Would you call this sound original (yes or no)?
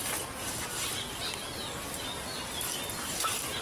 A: yes